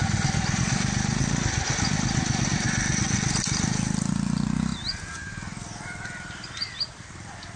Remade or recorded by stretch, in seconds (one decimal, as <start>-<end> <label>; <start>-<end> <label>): 0.0-7.6 recorded